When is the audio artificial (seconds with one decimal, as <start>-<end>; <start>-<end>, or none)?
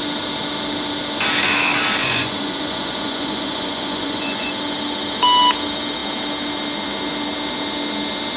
2.0-4.5